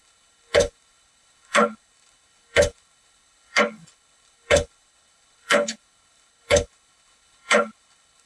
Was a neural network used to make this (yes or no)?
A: yes